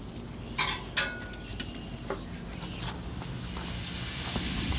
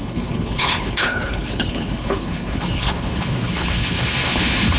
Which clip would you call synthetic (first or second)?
second